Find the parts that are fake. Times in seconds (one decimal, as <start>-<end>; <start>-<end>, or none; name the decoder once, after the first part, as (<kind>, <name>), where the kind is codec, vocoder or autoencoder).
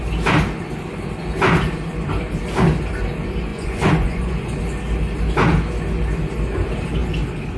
3.5-4.6 (vocoder, Vocos)